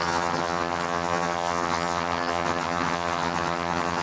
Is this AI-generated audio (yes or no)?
yes